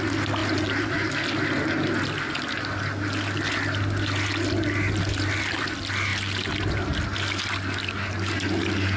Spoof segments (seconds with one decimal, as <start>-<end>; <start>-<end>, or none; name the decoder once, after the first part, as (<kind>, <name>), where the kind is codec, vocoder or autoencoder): 0.4-1.1 (vocoder, BigVGAN v2)